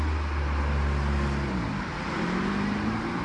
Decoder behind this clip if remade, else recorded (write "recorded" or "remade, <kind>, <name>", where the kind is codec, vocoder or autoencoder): recorded